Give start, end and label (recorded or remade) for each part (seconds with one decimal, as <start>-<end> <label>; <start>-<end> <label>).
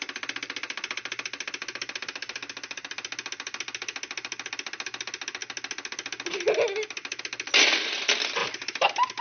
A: 0.0-9.2 recorded